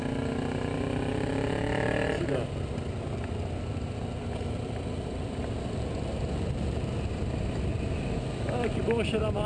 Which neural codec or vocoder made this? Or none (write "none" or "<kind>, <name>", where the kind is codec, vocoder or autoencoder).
none